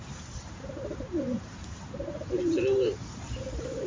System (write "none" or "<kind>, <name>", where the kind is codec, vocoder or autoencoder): vocoder, BigVGAN v2